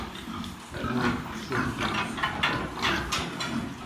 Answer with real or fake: real